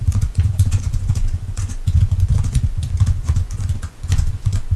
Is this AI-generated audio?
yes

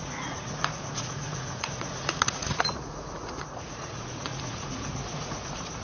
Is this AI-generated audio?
yes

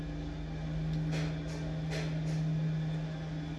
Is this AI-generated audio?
no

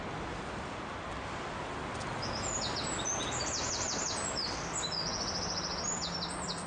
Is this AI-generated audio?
no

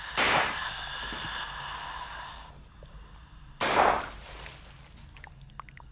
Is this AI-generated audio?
no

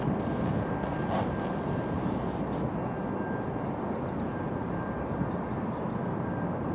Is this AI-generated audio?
no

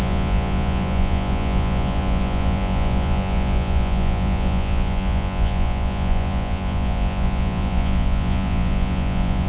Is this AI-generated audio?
yes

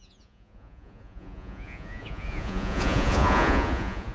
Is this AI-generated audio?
yes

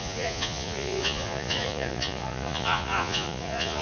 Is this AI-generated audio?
yes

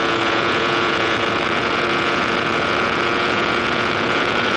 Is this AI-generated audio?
yes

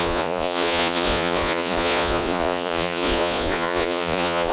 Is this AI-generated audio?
yes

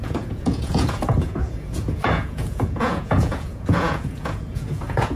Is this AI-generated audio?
yes